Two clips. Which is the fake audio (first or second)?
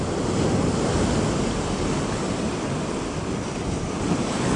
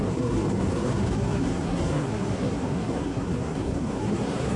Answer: second